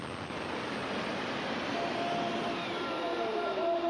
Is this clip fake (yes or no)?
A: no